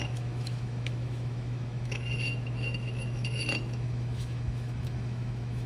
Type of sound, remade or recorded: remade